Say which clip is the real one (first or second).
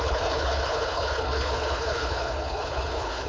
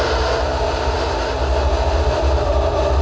second